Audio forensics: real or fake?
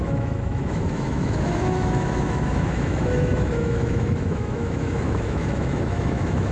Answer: fake